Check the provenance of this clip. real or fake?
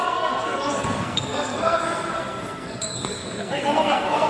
fake